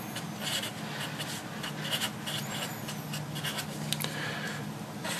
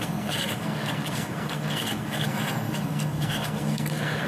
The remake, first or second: second